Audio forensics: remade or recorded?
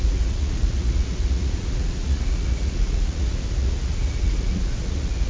remade